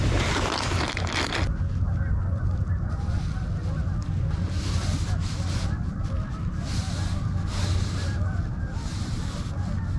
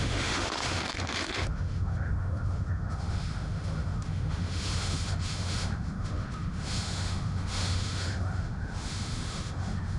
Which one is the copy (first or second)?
second